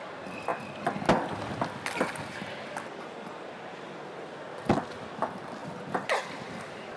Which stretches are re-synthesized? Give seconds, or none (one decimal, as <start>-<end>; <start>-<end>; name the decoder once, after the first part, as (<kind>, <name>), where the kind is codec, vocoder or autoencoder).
none